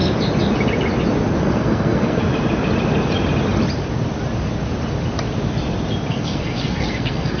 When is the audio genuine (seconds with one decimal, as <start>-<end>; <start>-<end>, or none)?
0.0-1.4; 2.2-6.1

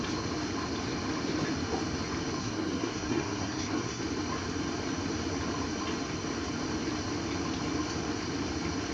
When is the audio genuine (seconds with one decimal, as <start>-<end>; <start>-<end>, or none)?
0.0-2.4; 4.0-8.9

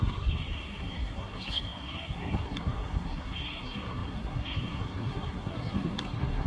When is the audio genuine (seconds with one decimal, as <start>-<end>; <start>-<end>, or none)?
none

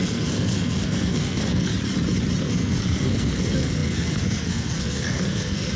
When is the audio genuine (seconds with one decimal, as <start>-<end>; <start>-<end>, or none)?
1.7-2.4